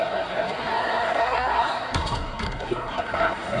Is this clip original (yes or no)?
no